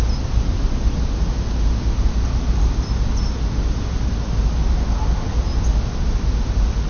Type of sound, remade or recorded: recorded